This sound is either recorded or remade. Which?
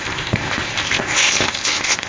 remade